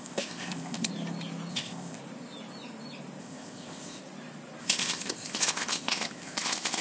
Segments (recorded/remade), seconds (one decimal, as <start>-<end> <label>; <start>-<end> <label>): 0.0-0.9 remade; 0.9-1.5 recorded; 1.5-2.0 remade; 2.0-3.2 recorded; 3.2-4.0 remade; 4.0-4.6 recorded; 4.6-6.8 remade

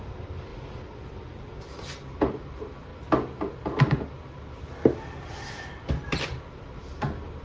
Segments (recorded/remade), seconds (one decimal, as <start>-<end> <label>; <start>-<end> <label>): 0.0-7.4 recorded

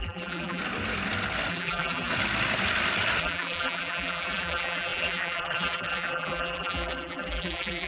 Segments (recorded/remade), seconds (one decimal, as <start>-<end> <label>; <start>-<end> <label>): 0.0-0.6 remade; 0.6-1.5 recorded; 1.5-2.1 remade; 2.1-3.2 recorded; 3.2-7.9 remade